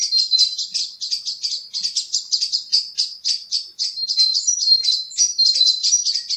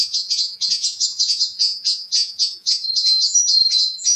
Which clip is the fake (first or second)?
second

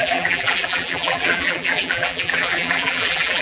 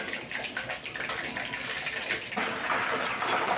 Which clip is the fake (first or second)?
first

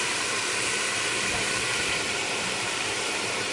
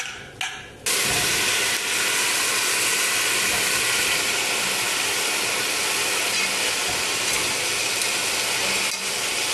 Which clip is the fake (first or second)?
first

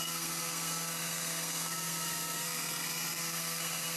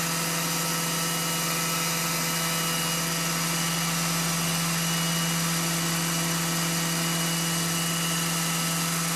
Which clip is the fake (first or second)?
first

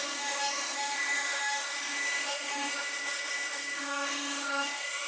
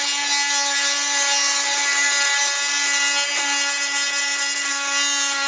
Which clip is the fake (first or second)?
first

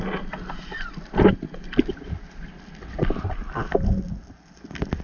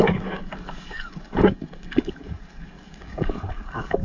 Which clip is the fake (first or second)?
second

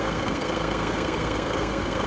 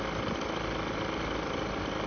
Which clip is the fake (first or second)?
first